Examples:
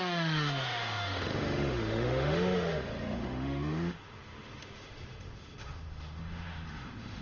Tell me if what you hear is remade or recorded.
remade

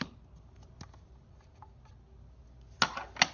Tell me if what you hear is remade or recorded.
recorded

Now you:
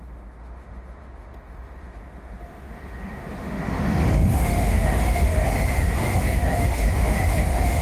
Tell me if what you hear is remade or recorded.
remade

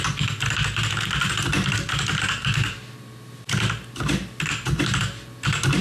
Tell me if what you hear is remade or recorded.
recorded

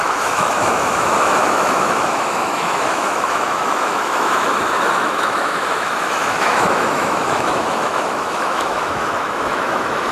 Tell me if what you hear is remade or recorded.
remade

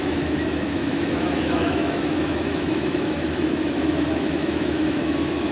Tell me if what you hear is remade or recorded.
remade